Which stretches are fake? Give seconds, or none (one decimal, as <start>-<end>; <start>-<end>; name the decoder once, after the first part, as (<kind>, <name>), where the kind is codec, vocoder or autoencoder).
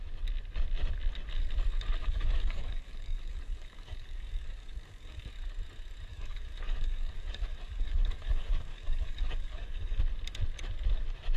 2.0-5.3 (codec, DAC); 6.1-10.0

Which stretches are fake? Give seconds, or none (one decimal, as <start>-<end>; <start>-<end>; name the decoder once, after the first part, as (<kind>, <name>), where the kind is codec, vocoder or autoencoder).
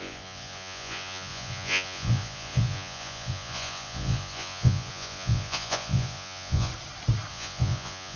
0.0-6.7 (vocoder, Vocos); 7.3-8.2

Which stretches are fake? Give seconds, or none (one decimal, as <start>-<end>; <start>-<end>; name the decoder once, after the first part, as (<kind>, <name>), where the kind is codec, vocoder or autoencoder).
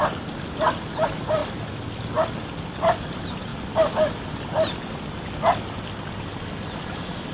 none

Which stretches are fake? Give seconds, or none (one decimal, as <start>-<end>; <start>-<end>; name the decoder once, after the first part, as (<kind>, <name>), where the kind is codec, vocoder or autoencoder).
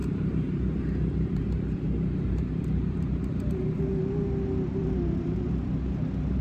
0.0-3.8 (vocoder, BigVGAN v2); 4.8-6.4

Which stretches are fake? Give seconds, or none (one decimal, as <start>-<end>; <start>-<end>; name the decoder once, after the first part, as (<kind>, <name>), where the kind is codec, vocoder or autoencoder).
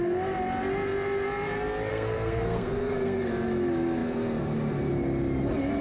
1.9-3.3 (codec, SNAC)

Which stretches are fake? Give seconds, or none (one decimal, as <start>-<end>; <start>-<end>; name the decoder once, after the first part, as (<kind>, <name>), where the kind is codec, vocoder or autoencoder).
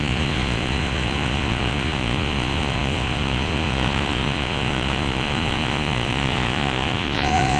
0.0-7.6 (vocoder, Vocos)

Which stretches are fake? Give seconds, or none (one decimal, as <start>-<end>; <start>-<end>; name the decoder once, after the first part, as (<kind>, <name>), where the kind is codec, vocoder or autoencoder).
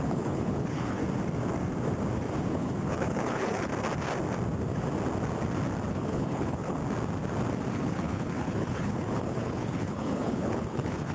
0.0-1.0 (codec, HILCodec); 2.5-3.7; 5.9-6.8; 7.7-11.1